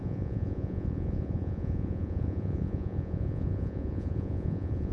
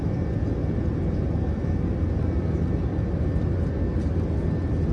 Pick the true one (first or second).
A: second